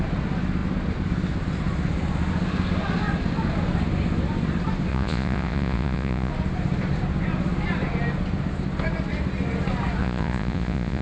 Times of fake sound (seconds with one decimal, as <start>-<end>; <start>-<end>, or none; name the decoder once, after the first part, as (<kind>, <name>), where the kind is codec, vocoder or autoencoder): 4.9-6.3 (vocoder, Vocos); 10.0-11.0